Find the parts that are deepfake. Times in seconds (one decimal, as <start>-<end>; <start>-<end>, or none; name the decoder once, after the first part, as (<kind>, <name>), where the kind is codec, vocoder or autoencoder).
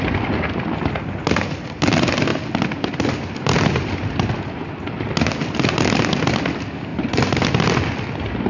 none